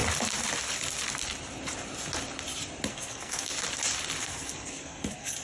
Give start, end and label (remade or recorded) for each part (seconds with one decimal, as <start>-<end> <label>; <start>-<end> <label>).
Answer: 0.0-2.9 recorded; 2.9-3.5 remade; 3.5-4.2 recorded; 4.2-5.4 remade